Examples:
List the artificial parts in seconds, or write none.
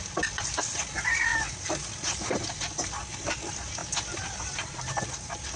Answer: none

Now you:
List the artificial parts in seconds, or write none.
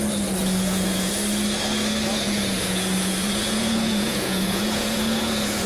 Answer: 0.4-1.1 (vocoder, Vocos); 2.1-5.7